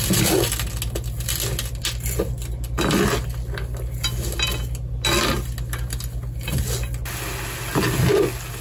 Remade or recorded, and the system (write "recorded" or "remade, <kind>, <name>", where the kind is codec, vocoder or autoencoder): recorded